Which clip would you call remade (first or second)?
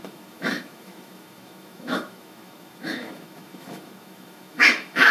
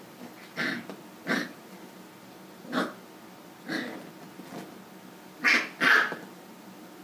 first